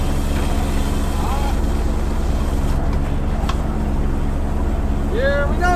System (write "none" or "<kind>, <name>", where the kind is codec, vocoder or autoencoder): none